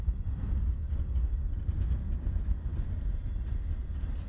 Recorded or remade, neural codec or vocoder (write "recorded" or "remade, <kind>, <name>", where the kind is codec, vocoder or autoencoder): recorded